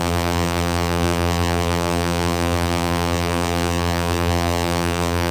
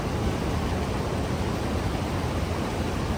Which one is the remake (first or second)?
first